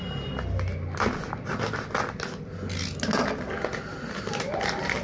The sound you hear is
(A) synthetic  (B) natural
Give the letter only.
B